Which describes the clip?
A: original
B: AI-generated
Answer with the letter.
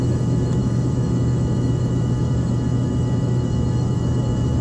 B